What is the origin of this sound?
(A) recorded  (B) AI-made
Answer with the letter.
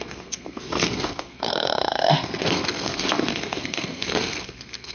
B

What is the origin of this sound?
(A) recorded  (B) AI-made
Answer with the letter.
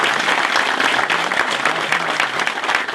A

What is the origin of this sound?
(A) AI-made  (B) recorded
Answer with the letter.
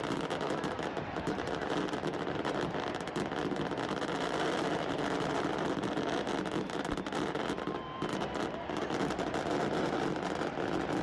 B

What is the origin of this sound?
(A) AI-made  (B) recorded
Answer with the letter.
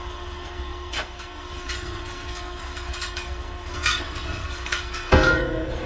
A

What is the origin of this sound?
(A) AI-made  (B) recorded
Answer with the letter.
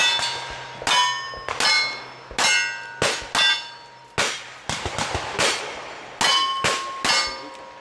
B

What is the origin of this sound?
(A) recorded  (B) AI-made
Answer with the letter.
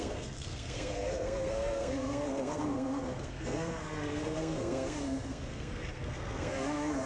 B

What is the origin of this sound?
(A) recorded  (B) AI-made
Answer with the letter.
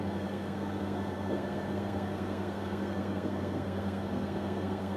B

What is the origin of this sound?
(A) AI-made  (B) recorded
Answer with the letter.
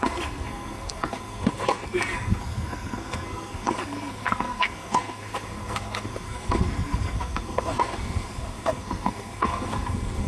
A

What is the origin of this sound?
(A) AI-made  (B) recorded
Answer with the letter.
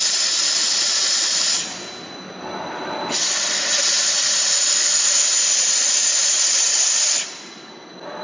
B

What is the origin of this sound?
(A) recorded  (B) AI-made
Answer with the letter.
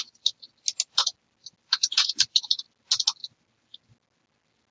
A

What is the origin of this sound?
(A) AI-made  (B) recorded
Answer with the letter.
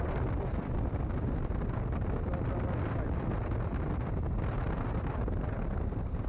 B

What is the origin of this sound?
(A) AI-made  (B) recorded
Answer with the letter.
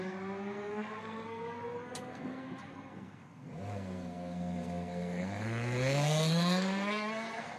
A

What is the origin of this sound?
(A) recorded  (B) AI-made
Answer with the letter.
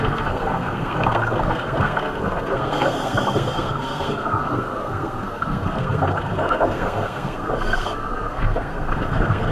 B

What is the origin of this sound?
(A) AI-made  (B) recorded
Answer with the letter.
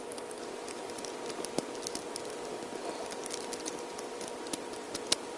B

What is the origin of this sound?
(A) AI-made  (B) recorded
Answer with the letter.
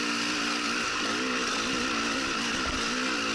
B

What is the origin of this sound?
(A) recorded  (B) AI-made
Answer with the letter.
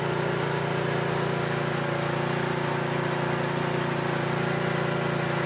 A